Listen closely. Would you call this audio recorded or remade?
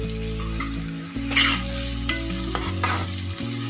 recorded